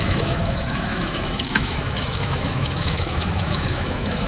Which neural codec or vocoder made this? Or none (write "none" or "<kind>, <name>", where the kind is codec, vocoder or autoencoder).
autoencoder, DAC-VAE